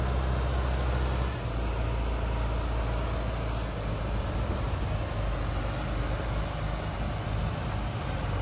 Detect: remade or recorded recorded